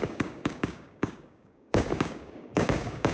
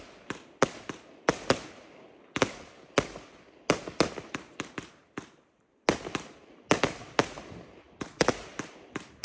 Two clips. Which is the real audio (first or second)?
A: second